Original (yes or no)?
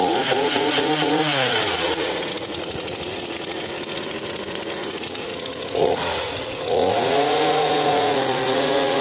no